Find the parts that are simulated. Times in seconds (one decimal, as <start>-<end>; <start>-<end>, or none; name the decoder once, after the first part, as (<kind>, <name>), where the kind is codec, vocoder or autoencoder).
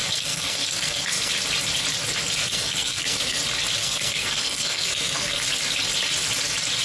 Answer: 0.0-1.3 (codec, SNAC); 2.4-3.4; 3.8-5.4